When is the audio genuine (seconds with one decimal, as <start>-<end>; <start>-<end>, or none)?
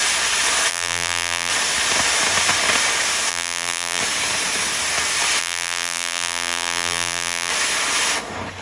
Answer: 0.0-0.7; 1.5-3.3; 4.0-5.4; 7.5-8.6